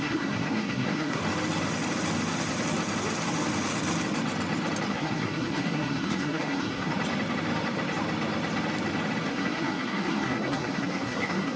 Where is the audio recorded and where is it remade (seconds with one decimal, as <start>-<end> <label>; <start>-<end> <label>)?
0.0-1.2 remade; 1.2-4.9 recorded; 4.9-6.9 remade; 6.9-9.3 recorded; 9.3-11.6 remade